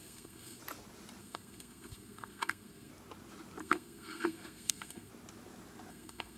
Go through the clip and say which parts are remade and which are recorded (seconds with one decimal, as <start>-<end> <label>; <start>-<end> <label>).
0.0-0.6 remade; 0.6-1.2 recorded; 1.2-2.9 remade; 2.9-3.6 recorded; 3.6-5.1 remade; 5.1-5.9 recorded; 5.9-6.4 remade